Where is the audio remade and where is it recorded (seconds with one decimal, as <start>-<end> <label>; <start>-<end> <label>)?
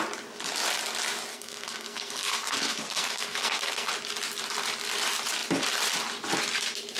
0.0-1.3 recorded; 1.3-3.9 remade; 3.9-7.0 recorded